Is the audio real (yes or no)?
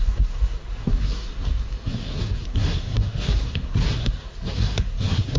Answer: no